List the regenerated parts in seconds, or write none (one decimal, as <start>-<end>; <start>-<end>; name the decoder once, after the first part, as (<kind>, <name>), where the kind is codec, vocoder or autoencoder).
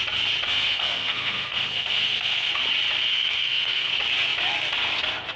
0.5-2.5 (codec, SNAC); 3.1-3.9